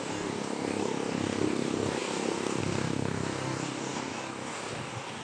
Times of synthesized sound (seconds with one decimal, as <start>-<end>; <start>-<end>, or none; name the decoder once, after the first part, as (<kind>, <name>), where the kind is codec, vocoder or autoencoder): 0.0-5.2 (codec, DAC)

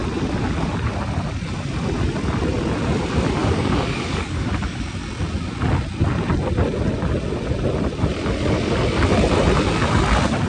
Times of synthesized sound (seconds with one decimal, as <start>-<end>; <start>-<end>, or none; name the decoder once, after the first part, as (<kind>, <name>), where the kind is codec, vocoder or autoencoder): 3.4-4.8 (codec, DAC)

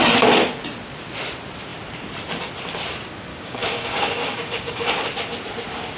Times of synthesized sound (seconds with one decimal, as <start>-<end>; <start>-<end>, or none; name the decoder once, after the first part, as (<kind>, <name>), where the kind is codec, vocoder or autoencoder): 3.3-4.9 (codec, DAC)

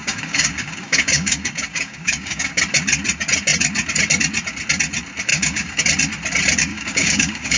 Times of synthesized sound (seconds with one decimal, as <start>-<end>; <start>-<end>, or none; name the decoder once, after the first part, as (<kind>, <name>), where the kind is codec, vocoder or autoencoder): 0.0-2.6 (codec, DAC); 5.3-5.8; 6.7-7.6

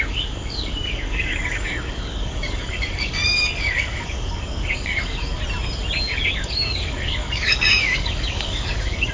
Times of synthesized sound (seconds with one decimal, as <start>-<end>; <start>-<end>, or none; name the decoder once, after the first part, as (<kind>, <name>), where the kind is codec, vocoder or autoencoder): 0.0-5.4 (codec, DAC); 6.0-9.1

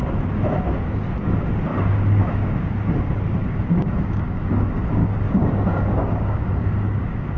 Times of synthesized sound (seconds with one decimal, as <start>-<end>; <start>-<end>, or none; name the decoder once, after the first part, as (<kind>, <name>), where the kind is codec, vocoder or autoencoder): 1.7-2.7 (codec, DAC); 3.4-4.5; 5.0-7.4

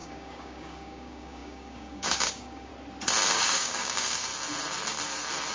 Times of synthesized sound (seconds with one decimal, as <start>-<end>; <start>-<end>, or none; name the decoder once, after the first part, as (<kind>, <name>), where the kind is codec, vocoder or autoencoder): 0.0-2.7 (codec, DAC); 3.3-4.3